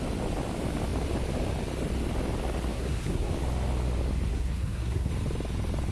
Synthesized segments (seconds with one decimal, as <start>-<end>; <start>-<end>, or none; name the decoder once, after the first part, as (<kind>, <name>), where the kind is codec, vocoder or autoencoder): 2.7-3.3 (codec, SNAC); 4.3-5.1